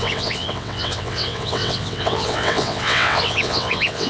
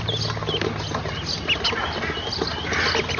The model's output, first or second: first